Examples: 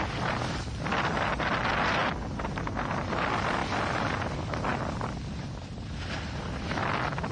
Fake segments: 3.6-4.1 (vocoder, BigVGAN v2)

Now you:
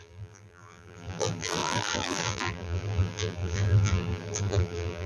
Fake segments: 0.0-5.1 (vocoder, BigVGAN v2)

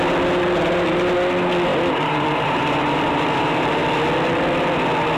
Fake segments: 1.7-3.8 (vocoder, BigVGAN v2)

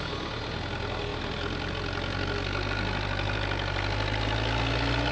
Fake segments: 1.1-1.7 (vocoder, BigVGAN v2)

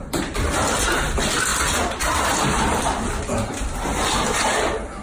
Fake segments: 0.0-1.5 (vocoder, BigVGAN v2); 2.2-5.0